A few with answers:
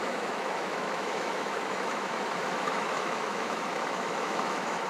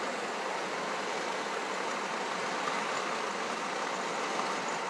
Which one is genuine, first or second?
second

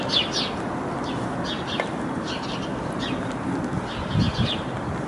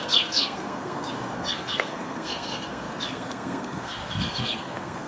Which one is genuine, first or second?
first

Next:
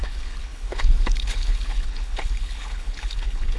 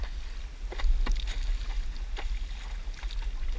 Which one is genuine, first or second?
second